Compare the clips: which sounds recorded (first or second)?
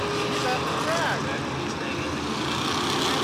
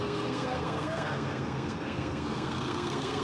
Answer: first